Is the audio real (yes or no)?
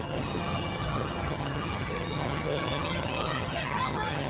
no